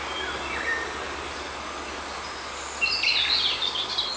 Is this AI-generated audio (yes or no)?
no